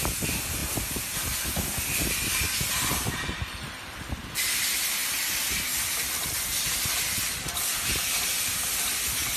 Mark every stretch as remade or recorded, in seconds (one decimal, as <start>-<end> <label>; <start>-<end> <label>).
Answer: 0.0-2.9 recorded; 2.9-4.2 remade; 4.2-9.4 recorded